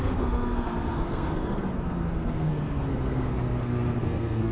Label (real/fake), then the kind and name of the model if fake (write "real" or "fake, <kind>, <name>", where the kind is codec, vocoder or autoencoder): fake, codec, SNAC